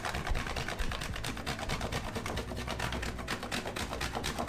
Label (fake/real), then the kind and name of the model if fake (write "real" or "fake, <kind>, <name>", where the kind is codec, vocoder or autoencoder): real